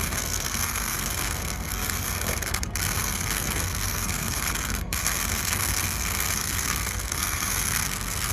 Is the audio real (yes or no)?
no